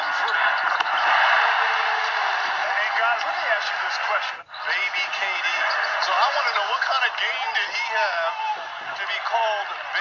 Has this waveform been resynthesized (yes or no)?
no